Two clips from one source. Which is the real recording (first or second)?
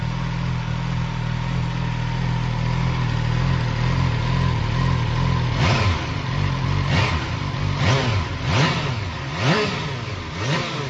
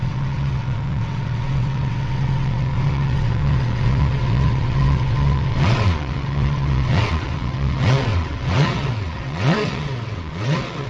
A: first